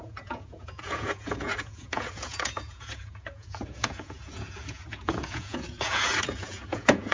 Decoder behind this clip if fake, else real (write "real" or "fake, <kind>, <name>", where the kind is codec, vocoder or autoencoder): fake, vocoder, Vocos